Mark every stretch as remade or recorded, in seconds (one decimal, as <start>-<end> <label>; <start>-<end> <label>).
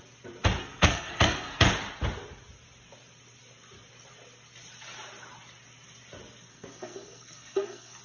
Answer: 0.0-0.6 recorded; 0.6-1.7 remade; 1.7-6.5 recorded; 6.5-8.0 remade